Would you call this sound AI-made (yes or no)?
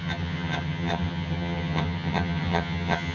yes